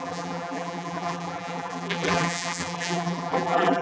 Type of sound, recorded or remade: remade